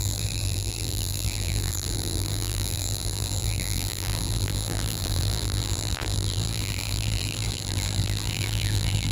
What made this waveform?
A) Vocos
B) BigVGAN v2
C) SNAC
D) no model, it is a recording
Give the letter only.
B